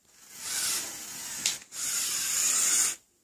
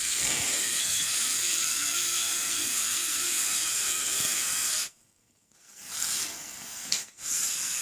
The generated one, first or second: second